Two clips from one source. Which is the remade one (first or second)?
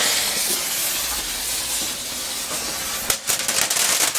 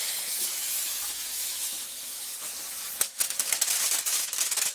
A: second